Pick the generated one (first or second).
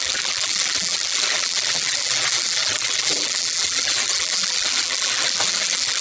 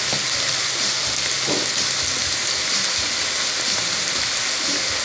first